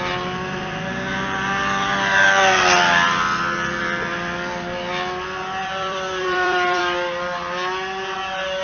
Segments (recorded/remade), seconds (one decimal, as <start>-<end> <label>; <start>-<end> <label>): 0.0-5.6 recorded; 5.6-6.8 remade; 6.8-8.6 recorded